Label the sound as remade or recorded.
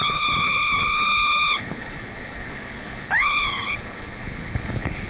remade